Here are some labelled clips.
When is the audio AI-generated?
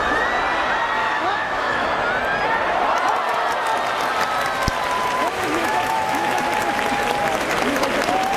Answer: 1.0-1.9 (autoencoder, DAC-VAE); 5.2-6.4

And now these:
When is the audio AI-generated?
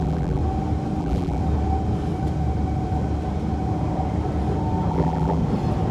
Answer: 0.0-0.4 (vocoder, BigVGAN v2); 1.0-1.4; 4.9-5.4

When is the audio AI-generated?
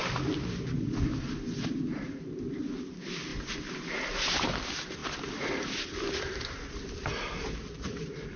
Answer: 2.0-3.3 (vocoder, BigVGAN v2); 4.4-8.4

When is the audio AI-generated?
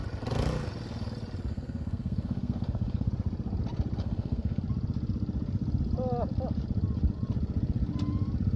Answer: 1.5-3.1 (codec, SNAC); 4.0-4.6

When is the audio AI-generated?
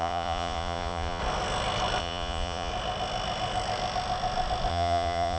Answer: 0.0-1.2 (vocoder, Vocos); 2.0-2.7; 4.7-5.4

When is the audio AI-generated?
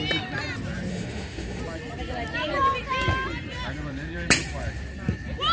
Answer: 0.9-1.6 (autoencoder, DAC-VAE)